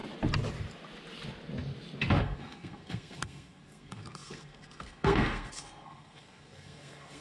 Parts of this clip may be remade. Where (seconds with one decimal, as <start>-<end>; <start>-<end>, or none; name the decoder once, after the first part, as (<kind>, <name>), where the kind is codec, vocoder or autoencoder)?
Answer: 2.2-7.2 (codec, SNAC)